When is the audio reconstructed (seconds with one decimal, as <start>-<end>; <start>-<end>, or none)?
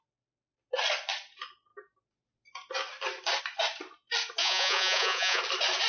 4.4-5.4